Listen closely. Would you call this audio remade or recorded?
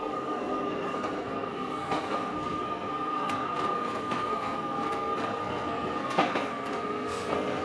remade